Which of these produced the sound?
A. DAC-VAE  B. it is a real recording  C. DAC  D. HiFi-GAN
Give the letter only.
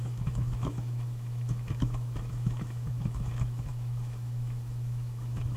A